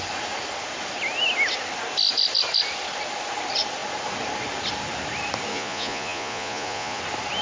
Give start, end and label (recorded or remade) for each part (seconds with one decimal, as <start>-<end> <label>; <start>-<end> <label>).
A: 0.0-5.5 recorded; 5.5-7.0 remade; 7.0-7.4 recorded